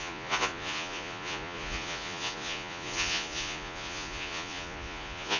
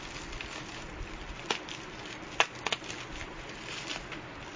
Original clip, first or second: second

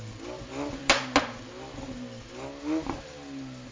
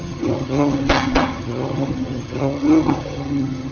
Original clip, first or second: first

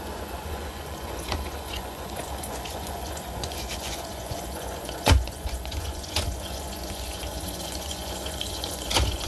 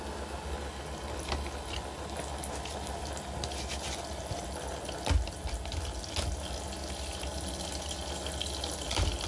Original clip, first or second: second